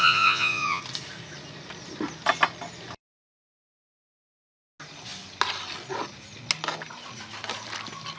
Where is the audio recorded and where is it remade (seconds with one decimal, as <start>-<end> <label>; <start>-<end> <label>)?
0.0-0.8 remade; 0.8-8.2 recorded